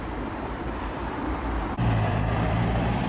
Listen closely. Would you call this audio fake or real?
fake